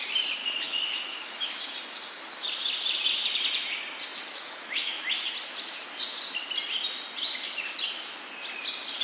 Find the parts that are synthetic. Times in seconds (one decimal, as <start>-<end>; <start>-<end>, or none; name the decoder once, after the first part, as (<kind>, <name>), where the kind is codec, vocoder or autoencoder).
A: 0.4-1.6 (autoencoder, DAC-VAE); 4.1-5.1